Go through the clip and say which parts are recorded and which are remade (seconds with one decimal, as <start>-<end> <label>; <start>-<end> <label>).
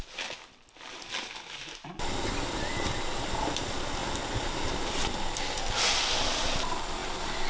0.0-7.5 recorded